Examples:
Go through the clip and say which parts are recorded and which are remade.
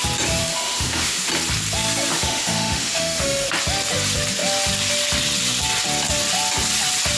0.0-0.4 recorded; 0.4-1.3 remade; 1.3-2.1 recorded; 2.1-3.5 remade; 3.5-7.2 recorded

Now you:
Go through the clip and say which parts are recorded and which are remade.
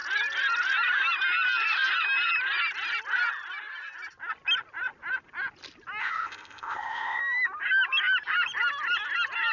0.0-6.0 recorded; 6.0-7.2 remade; 7.2-9.5 recorded